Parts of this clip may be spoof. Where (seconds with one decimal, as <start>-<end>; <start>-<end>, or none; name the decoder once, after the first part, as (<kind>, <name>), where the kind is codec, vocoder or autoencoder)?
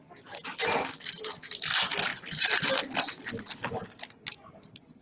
none